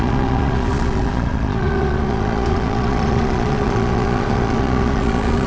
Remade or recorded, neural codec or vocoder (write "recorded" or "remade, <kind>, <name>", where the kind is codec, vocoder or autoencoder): remade, vocoder, Vocos